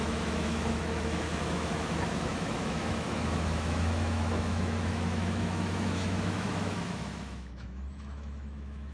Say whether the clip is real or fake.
fake